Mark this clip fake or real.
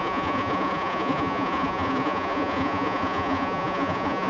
fake